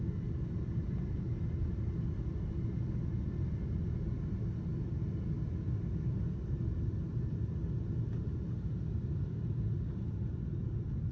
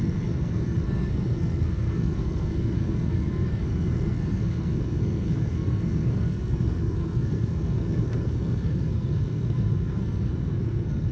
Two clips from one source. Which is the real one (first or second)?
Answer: first